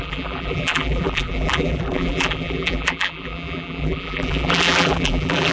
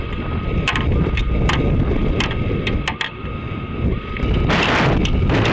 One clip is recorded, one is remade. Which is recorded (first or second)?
second